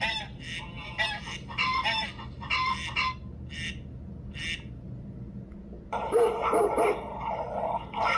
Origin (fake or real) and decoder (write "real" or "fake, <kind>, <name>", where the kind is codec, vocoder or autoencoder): real